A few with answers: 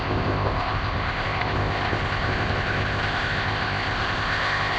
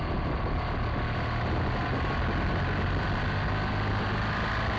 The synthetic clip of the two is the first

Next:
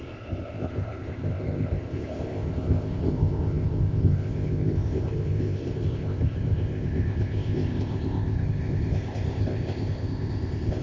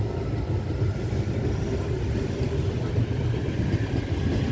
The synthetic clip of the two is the first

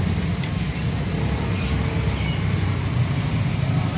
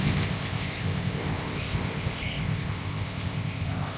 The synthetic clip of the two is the second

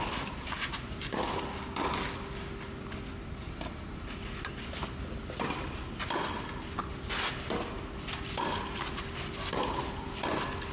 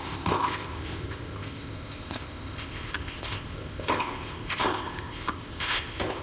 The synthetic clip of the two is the second